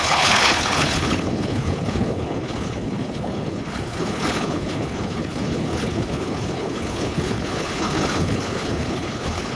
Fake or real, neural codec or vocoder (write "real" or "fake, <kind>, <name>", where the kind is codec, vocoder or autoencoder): fake, codec, HILCodec